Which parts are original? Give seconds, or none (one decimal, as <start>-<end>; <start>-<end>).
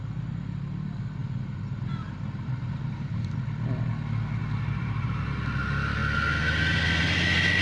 0.0-1.2; 3.3-4.4; 5.2-7.6